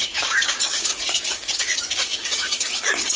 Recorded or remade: remade